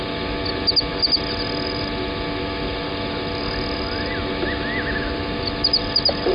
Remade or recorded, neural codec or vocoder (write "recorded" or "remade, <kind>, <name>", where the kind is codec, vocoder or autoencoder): recorded